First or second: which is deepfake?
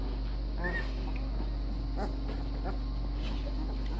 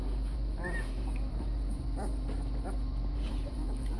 second